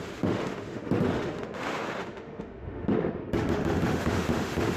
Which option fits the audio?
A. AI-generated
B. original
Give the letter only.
A